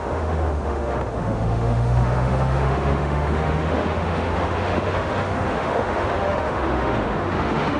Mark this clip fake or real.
fake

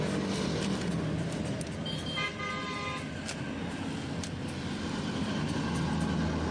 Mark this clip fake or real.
real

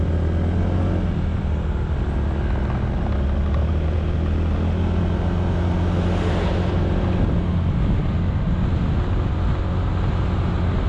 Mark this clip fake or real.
real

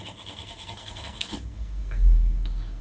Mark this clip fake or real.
fake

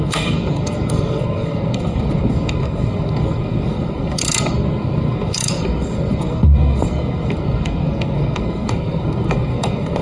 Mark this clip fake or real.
fake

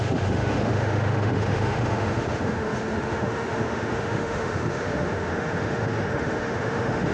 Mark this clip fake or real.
fake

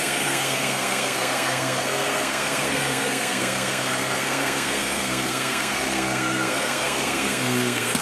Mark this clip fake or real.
fake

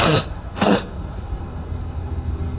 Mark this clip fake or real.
fake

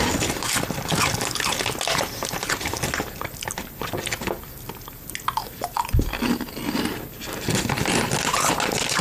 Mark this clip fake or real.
real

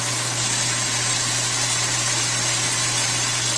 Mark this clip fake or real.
real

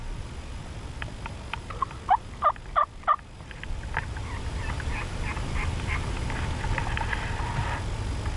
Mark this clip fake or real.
real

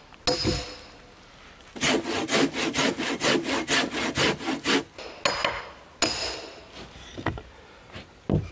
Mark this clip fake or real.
real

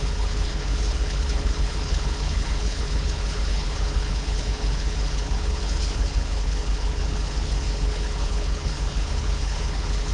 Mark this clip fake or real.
fake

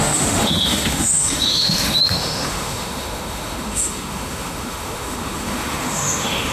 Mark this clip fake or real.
fake